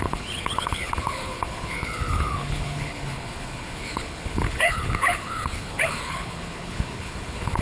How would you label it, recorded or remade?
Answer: remade